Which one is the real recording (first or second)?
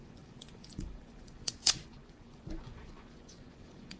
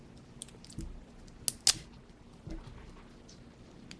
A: second